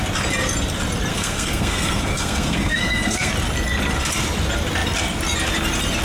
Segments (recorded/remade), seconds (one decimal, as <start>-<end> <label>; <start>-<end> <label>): 0.0-1.1 recorded; 1.1-3.3 remade; 3.3-6.0 recorded